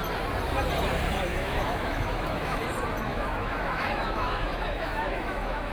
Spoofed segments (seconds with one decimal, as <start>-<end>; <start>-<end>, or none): 1.3-2.6; 3.1-5.7